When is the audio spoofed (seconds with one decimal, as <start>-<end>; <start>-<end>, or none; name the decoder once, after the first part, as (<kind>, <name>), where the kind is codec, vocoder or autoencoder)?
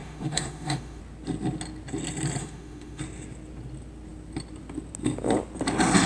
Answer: 0.0-1.0 (autoencoder, DAC-VAE); 2.4-3.0